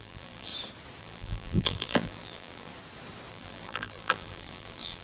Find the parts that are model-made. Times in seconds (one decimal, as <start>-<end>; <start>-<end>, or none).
0.0-0.5; 1.0-2.7; 3.3-5.0